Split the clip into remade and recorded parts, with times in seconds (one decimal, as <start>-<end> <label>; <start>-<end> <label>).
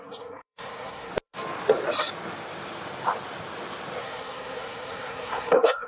0.0-1.1 remade; 1.1-4.0 recorded; 4.0-5.9 remade